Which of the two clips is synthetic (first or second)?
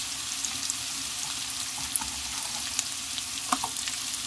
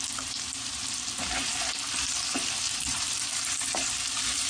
second